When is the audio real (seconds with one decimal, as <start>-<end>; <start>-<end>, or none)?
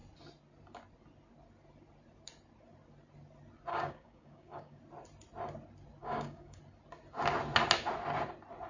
0.0-3.7; 4.8-6.0; 6.6-8.7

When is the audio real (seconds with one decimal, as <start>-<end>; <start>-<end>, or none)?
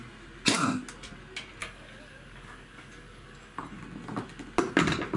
0.0-1.6; 3.8-5.2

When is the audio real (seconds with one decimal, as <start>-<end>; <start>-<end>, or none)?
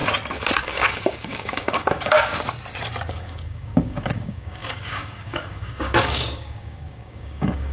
0.0-0.6; 2.3-3.1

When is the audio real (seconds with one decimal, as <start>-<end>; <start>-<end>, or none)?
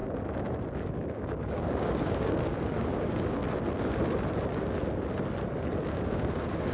0.0-0.8; 3.4-5.9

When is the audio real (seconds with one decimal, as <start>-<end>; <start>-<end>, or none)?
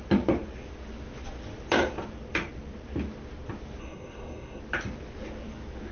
0.0-3.8; 4.6-5.9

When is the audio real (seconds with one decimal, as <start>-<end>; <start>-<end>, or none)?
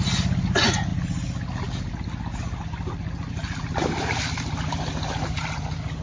0.0-6.0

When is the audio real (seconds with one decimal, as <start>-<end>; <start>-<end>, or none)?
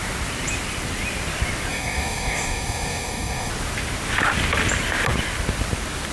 0.0-1.7; 3.5-6.1